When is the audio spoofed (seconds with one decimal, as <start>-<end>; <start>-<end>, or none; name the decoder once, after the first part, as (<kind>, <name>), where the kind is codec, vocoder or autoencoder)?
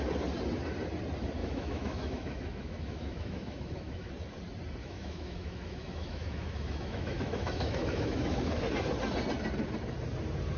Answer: 1.4-4.1 (autoencoder, DAC-VAE); 4.8-8.6